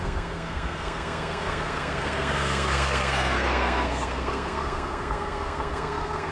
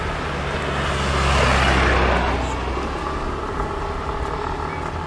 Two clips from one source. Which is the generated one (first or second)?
first